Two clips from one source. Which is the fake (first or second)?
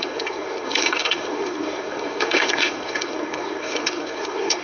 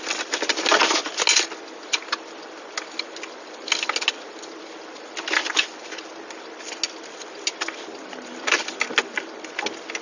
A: first